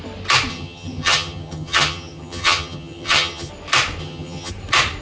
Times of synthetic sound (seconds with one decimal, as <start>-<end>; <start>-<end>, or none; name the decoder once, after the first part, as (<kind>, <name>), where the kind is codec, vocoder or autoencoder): 0.5-3.5 (vocoder, HiFi-GAN); 4.0-4.5